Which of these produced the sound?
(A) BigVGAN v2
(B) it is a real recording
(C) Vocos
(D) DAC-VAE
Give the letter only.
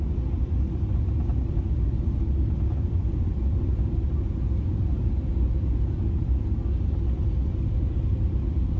B